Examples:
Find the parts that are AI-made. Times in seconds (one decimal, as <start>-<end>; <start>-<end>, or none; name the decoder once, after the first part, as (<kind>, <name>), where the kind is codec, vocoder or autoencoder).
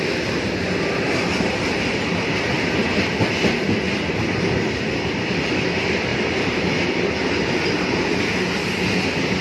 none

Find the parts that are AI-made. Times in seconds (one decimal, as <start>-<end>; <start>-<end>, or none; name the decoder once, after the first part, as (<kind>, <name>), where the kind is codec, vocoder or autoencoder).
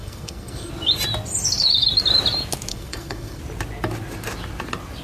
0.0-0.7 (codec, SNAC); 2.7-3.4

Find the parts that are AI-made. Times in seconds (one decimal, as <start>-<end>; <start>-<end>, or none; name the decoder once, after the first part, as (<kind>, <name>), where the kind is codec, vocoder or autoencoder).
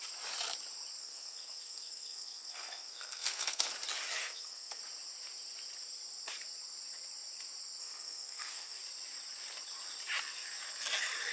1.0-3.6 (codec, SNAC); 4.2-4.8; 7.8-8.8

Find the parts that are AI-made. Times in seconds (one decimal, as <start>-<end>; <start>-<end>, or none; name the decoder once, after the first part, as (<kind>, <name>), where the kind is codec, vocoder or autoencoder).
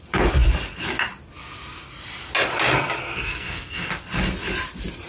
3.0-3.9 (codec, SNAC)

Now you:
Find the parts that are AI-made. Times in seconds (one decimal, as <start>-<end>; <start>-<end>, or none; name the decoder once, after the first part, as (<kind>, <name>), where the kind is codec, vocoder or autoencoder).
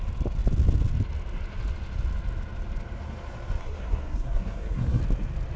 3.6-5.0 (codec, SNAC)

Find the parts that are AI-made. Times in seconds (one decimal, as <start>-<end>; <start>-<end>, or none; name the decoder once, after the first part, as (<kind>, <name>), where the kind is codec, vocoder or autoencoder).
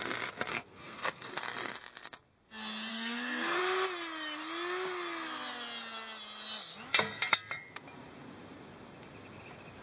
0.5-1.3 (codec, SNAC); 2.9-3.6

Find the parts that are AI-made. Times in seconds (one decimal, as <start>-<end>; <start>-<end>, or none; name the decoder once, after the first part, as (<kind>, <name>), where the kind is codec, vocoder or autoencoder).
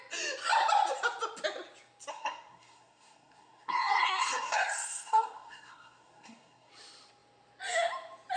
2.1-6.7 (codec, SNAC)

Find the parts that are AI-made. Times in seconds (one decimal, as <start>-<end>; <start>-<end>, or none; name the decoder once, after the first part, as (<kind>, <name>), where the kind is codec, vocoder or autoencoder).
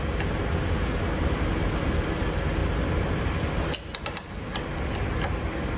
none